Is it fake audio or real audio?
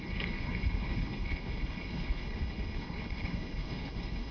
fake